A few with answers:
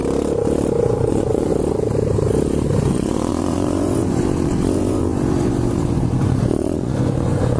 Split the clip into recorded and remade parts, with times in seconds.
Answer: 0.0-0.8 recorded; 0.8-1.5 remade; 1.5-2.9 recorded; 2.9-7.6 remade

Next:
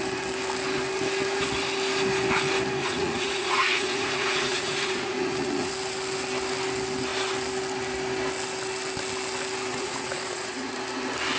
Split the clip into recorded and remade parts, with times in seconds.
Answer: 0.0-2.8 recorded; 2.8-5.7 remade; 5.7-9.7 recorded; 9.7-10.7 remade; 10.7-11.4 recorded

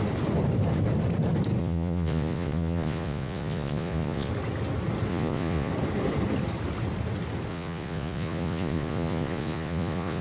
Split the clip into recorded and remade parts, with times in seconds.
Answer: 0.0-1.6 recorded; 1.6-4.3 remade; 4.3-5.1 recorded; 5.1-5.7 remade; 5.7-7.5 recorded; 7.5-10.2 remade

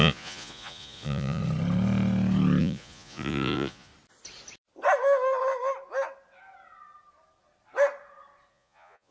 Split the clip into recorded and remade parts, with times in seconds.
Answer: 0.0-1.4 remade; 1.4-2.6 recorded; 2.6-3.9 remade; 3.9-8.5 recorded; 8.5-9.1 remade

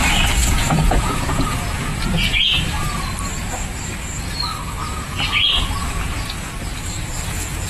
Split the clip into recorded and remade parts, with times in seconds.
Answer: 0.0-0.4 recorded; 0.4-2.4 remade; 2.4-4.8 recorded; 4.8-6.5 remade; 6.5-7.7 recorded